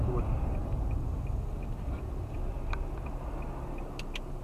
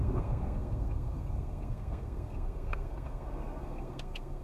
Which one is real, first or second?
first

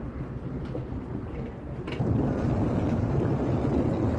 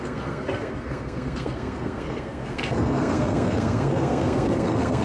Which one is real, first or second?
first